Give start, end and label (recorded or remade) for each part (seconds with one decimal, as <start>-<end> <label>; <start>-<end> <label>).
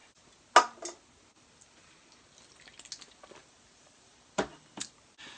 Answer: 0.0-3.4 recorded; 3.4-4.8 remade; 4.8-5.4 recorded